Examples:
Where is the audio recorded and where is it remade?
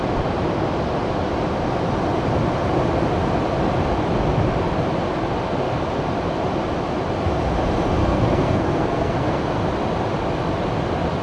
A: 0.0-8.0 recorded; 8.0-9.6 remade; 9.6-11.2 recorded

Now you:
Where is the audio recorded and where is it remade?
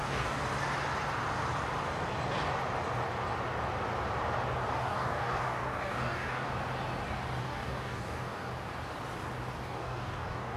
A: 0.0-0.4 remade; 0.4-4.7 recorded; 4.7-6.5 remade; 6.5-7.4 recorded; 7.4-8.5 remade; 8.5-9.6 recorded; 9.6-10.6 remade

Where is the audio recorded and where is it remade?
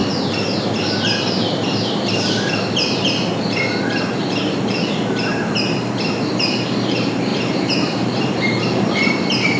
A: 0.0-1.6 remade; 1.6-5.8 recorded; 5.8-9.6 remade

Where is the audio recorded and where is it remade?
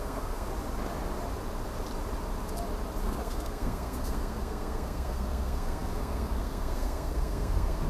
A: 0.0-0.5 remade; 0.5-3.0 recorded; 3.0-7.9 remade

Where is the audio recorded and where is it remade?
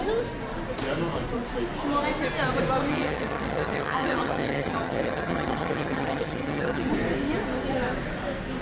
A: 0.0-2.9 recorded; 2.9-6.9 remade; 6.9-8.6 recorded